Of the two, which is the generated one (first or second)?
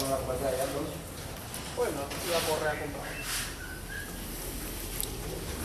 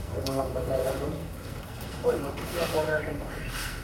second